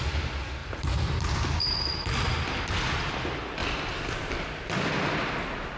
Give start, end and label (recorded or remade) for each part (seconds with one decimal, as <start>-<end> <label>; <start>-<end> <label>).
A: 0.0-0.6 recorded; 0.6-1.1 remade; 1.1-5.8 recorded